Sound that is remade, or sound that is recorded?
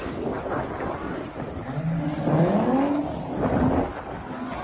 recorded